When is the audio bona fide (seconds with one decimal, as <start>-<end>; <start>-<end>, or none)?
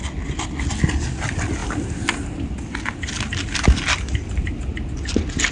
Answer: 0.0-5.5